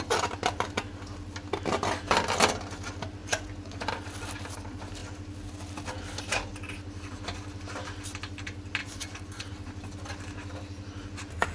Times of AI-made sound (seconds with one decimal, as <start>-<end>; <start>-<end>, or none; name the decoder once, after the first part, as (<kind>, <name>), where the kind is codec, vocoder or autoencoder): 3.2-3.9 (vocoder, Vocos); 8.8-9.5